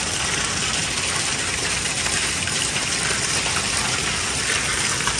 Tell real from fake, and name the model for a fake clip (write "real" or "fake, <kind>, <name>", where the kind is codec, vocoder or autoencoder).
real